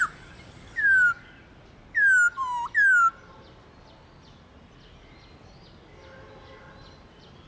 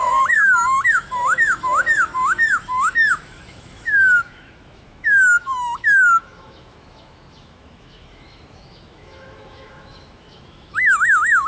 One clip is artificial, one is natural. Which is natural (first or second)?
first